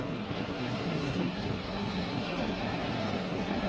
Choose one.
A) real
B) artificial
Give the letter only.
B